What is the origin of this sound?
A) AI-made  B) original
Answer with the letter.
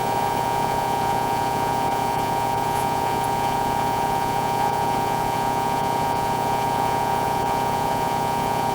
A